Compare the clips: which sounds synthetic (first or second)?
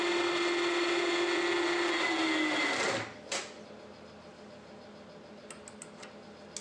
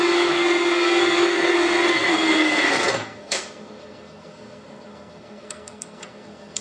second